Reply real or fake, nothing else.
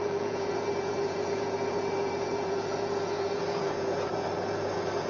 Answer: fake